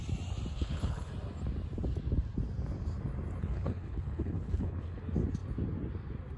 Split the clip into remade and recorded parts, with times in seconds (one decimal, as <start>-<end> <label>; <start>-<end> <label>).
0.0-0.5 recorded; 0.5-1.1 remade; 1.1-3.4 recorded; 3.4-5.0 remade; 5.0-6.4 recorded